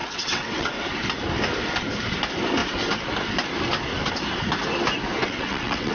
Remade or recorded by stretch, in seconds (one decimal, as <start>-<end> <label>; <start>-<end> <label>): 0.0-0.7 remade; 0.7-5.2 recorded; 5.2-5.9 remade